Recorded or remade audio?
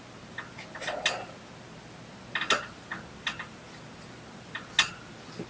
recorded